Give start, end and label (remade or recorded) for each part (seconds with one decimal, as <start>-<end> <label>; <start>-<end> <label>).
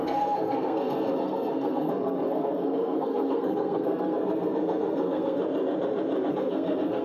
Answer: 0.0-5.4 remade; 5.4-6.3 recorded; 6.3-7.0 remade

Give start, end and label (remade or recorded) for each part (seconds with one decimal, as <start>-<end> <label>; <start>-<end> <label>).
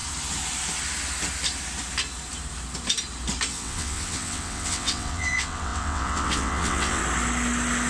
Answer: 0.0-3.5 recorded; 3.5-7.0 remade; 7.0-7.9 recorded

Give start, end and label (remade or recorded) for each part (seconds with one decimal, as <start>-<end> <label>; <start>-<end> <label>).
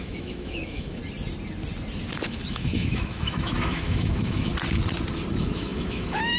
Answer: 0.0-1.0 remade; 1.0-2.3 recorded; 2.3-4.5 remade; 4.5-5.3 recorded; 5.3-6.4 remade